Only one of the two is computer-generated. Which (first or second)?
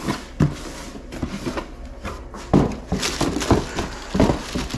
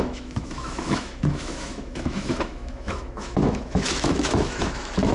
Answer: second